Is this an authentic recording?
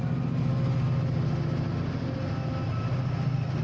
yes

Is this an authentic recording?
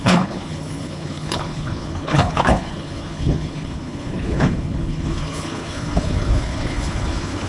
no